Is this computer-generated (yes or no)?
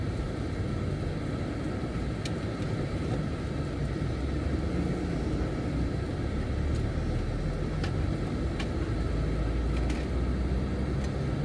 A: no